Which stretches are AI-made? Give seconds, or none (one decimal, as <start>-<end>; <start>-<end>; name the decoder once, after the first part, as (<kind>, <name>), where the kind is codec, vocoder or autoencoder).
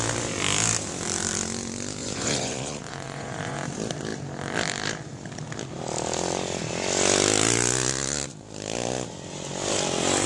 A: 2.0-3.6 (vocoder, Vocos)